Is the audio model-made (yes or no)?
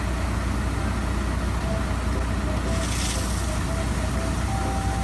no